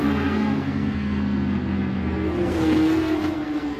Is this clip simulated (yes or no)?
yes